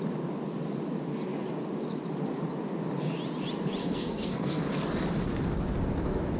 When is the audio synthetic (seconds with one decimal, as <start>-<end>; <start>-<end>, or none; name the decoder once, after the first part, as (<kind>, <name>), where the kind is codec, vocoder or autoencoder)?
3.8-4.6 (codec, SNAC)